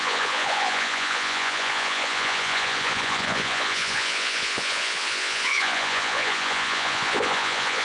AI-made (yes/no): yes